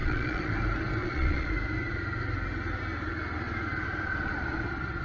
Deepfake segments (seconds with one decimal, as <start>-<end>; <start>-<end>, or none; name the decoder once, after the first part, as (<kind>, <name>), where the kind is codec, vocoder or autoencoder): 0.0-0.5 (vocoder, Vocos); 1.0-1.5